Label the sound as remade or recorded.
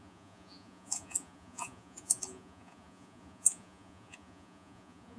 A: remade